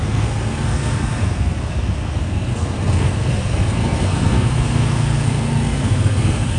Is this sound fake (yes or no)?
yes